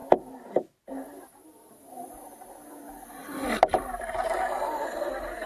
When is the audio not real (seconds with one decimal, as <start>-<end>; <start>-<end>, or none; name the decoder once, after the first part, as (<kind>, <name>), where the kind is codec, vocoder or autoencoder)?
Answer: none